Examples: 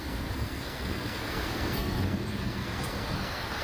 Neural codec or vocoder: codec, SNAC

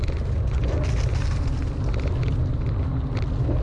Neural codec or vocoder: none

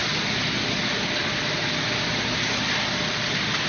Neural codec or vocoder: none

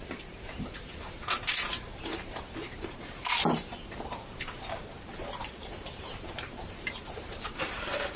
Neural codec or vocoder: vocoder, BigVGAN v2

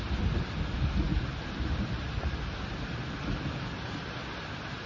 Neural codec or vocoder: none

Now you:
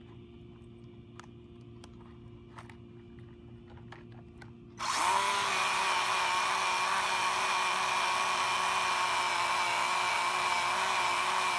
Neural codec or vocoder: none